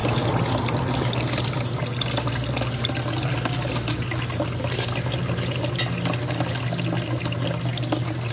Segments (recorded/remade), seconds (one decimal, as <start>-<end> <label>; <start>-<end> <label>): 0.0-8.3 recorded